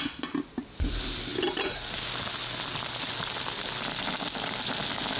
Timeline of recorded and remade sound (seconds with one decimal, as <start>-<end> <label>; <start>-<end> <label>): 0.0-5.2 recorded